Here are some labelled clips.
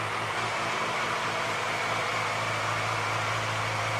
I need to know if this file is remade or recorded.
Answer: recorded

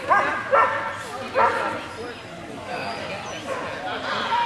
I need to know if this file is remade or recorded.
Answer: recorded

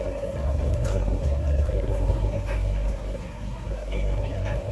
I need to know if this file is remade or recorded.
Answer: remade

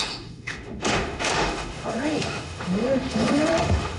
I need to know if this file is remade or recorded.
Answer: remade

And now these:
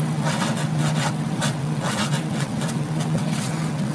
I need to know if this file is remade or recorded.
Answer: remade